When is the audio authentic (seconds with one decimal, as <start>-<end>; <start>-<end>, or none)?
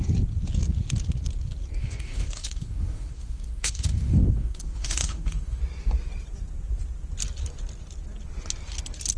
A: 0.0-1.8; 5.6-9.2